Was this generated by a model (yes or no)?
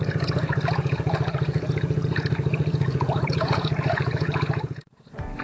yes